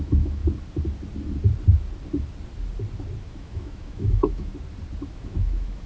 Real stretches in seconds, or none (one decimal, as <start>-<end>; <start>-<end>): 0.4-3.2; 4.5-5.0